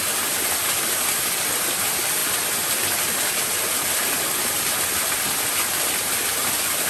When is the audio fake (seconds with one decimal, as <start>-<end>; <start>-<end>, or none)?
none